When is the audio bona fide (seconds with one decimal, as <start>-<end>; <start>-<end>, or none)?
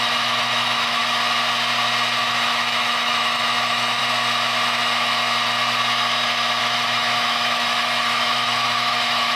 1.0-2.2; 4.0-6.6